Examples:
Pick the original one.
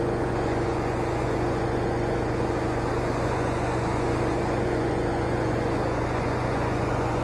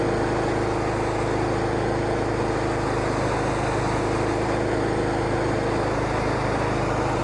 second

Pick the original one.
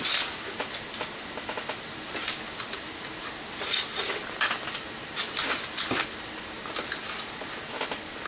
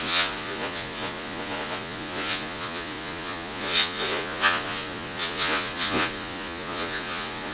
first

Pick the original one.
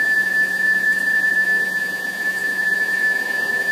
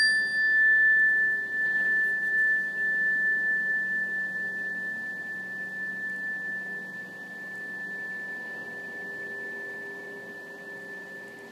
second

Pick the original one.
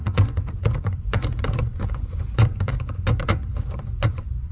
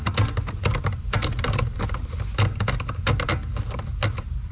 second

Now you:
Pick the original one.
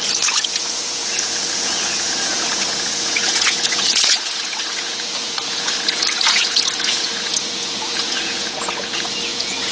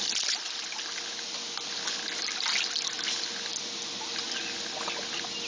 second